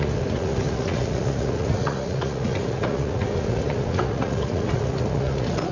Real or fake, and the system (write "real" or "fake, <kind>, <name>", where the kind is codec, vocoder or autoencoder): fake, vocoder, Vocos